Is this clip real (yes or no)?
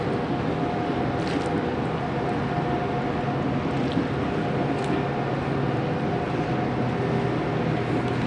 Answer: yes